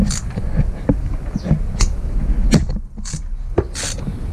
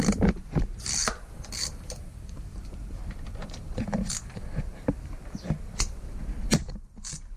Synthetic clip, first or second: second